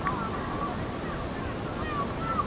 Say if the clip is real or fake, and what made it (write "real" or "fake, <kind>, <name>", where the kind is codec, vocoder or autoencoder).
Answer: real